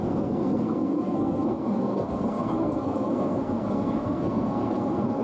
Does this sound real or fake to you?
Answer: fake